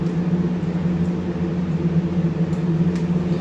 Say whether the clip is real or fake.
real